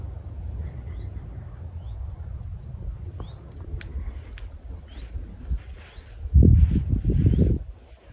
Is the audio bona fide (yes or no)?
yes